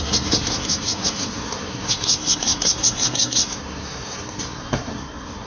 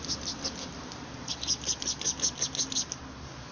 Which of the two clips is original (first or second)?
second